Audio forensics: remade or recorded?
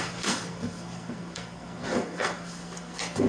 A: remade